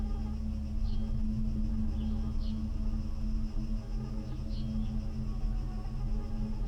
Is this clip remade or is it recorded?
recorded